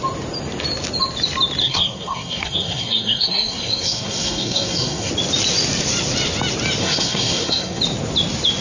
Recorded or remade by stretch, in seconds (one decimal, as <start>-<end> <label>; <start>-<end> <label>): 0.0-1.6 recorded; 1.6-5.1 remade; 5.1-6.8 recorded; 6.8-7.8 remade; 7.8-8.6 recorded

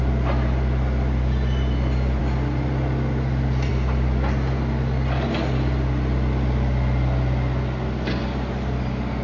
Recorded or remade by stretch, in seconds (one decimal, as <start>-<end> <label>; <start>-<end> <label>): 0.0-9.2 recorded

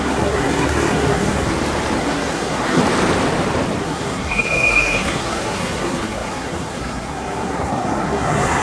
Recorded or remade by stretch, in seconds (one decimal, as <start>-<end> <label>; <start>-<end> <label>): 0.0-1.5 remade; 1.5-2.0 recorded; 2.0-2.8 remade; 2.8-3.8 recorded; 3.8-8.6 remade

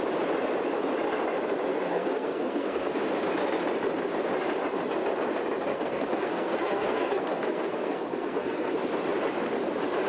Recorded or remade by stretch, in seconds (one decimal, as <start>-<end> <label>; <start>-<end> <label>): 0.0-1.7 recorded; 1.7-3.0 remade; 3.0-5.7 recorded; 5.7-8.7 remade; 8.7-10.1 recorded

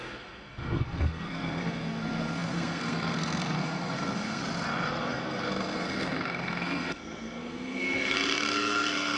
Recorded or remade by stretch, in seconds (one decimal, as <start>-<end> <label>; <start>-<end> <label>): 0.0-4.4 remade; 4.4-5.0 recorded; 5.0-9.2 remade

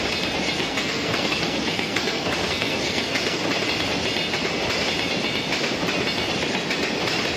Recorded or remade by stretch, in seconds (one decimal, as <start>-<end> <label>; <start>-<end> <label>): 0.0-0.6 recorded; 0.6-3.4 remade; 3.4-7.4 recorded

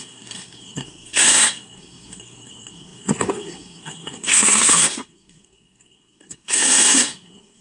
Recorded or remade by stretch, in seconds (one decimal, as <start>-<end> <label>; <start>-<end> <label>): 0.0-7.6 remade